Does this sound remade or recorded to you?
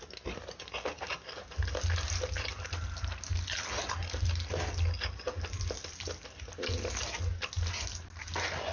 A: recorded